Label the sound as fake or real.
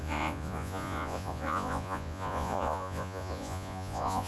fake